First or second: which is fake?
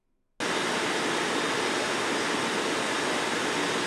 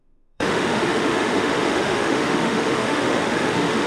second